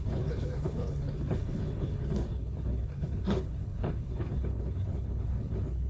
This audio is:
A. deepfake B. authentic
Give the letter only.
A